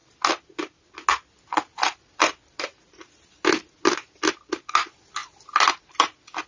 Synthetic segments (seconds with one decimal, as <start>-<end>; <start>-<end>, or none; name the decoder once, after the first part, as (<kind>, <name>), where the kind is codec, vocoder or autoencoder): none